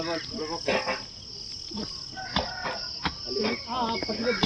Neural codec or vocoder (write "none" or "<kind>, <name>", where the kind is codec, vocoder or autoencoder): none